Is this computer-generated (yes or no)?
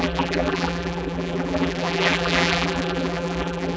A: yes